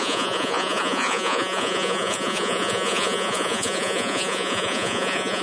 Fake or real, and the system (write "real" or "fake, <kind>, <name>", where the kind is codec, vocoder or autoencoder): fake, vocoder, Vocos